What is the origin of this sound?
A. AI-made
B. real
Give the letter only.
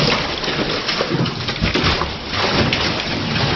B